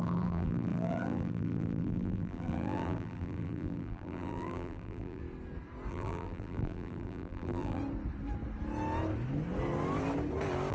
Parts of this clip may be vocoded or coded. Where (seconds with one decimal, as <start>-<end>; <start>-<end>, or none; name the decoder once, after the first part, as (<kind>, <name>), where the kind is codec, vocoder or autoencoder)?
0.0-5.2 (vocoder, BigVGAN v2); 5.9-7.8